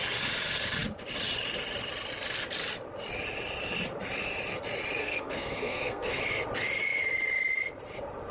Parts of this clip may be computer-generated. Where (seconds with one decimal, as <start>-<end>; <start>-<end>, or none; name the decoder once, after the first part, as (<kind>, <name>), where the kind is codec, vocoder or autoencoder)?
5.0-6.2 (codec, SNAC)